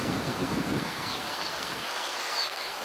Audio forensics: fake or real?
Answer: fake